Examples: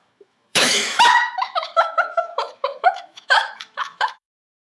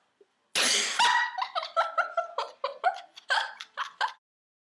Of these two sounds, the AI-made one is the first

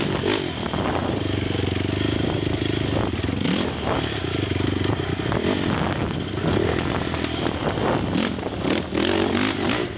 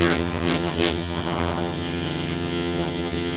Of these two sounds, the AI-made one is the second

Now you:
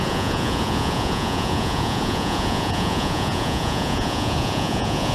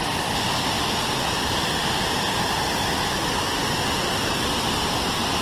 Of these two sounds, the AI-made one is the first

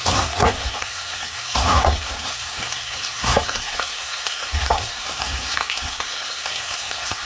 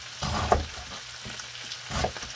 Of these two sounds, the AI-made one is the first